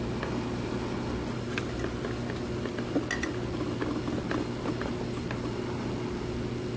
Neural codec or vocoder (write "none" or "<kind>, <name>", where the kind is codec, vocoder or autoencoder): none